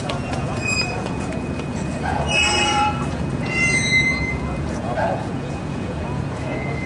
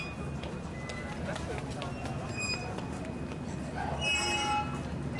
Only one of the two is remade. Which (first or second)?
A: first